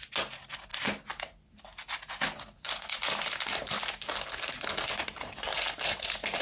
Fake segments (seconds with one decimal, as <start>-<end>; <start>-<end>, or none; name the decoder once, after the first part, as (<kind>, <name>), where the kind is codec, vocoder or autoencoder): none